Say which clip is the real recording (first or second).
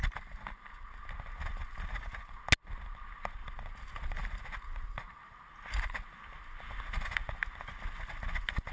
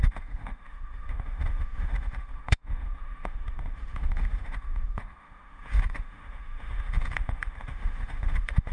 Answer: first